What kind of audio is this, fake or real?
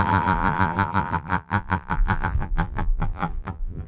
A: fake